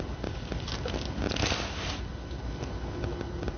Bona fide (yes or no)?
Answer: yes